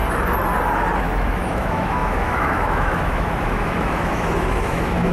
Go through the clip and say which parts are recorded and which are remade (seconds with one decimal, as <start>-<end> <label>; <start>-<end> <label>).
0.0-1.0 recorded; 1.0-5.1 remade